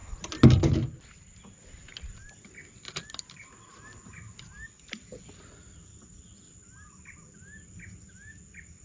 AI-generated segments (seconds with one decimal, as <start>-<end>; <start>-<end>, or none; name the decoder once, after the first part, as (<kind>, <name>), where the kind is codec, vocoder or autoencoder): none